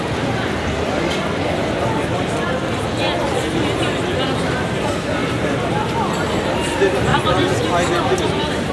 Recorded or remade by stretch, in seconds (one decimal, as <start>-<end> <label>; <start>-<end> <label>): 0.0-7.1 recorded; 7.1-7.6 remade; 7.6-8.7 recorded